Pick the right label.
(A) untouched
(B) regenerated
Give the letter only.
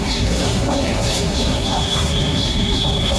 B